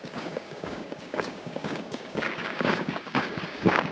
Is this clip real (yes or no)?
no